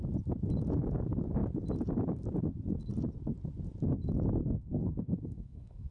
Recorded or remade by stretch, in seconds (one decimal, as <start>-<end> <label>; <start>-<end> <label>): 0.0-4.4 recorded; 4.4-5.9 remade